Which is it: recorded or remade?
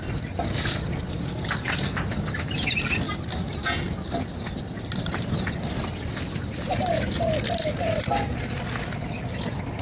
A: recorded